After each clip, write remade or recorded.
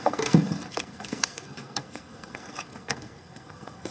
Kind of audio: remade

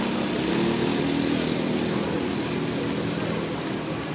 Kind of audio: recorded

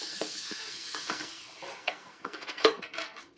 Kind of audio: remade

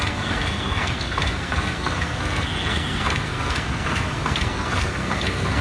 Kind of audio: remade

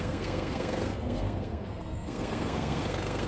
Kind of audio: remade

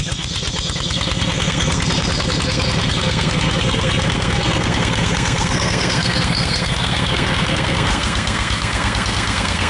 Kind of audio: remade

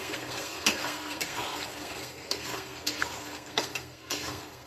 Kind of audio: remade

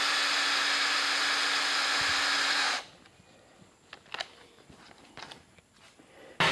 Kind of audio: recorded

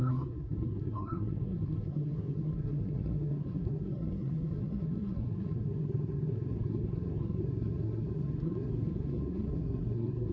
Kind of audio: remade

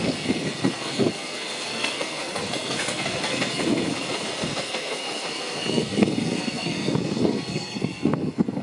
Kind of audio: remade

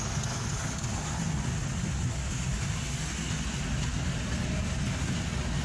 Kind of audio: recorded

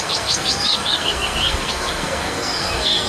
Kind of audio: remade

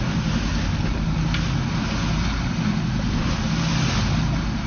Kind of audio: recorded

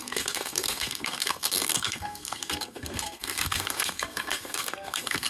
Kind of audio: remade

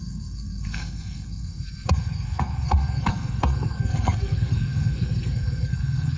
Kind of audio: remade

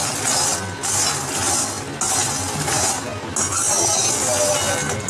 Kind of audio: recorded